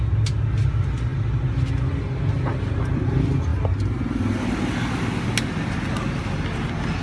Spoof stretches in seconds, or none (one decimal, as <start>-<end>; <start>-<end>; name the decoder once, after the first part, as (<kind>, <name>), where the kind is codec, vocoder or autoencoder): none